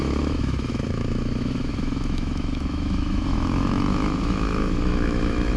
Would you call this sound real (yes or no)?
no